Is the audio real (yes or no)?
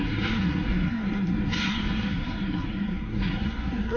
no